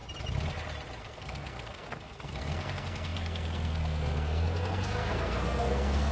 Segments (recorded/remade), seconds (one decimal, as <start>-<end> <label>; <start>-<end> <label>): 0.0-1.0 recorded; 1.0-6.1 remade